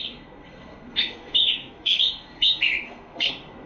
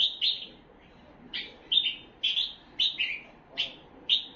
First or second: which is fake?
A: first